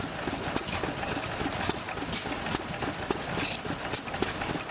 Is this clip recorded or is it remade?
recorded